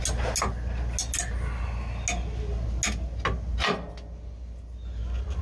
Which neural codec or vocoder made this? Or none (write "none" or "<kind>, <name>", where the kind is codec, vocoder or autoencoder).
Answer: none